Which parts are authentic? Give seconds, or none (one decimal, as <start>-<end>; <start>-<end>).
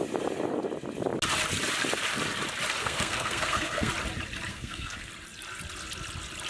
0.0-2.8; 3.9-4.5; 5.1-6.5